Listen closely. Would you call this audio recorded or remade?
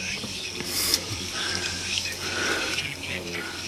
remade